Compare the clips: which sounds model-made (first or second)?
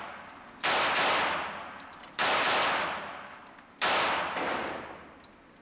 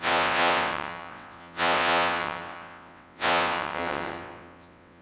second